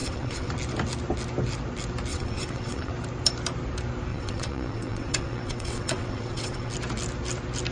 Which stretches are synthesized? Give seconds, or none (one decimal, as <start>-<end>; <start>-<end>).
0.0-0.5; 2.1-2.9; 4.1-6.7